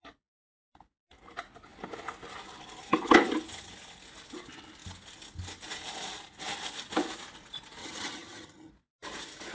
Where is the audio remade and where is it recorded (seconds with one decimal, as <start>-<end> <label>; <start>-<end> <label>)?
0.0-7.8 recorded; 7.8-8.7 remade; 8.7-9.5 recorded